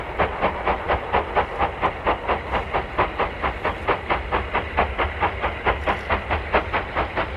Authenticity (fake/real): real